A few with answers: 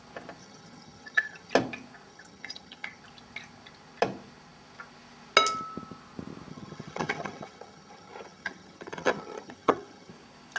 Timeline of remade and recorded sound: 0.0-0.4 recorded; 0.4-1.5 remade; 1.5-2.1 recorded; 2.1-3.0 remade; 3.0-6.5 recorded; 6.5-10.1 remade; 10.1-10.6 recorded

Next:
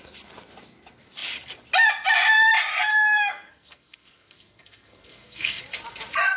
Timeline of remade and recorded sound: 0.0-2.9 recorded; 2.9-5.6 remade; 5.6-6.4 recorded

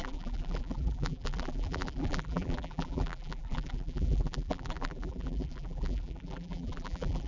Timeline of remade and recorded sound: 0.0-7.3 remade